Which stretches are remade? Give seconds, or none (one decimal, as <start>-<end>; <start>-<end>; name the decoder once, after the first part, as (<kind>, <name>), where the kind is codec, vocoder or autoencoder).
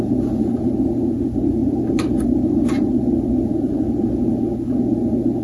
1.6-3.0 (vocoder, BigVGAN v2); 3.5-4.1